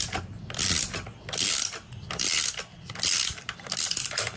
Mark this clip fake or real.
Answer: real